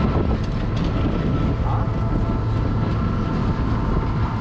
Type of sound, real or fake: real